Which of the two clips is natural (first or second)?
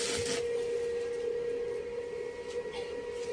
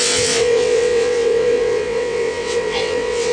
first